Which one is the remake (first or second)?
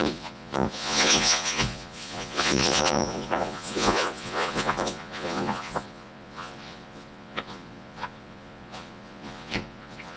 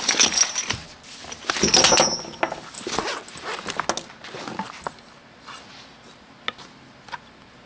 first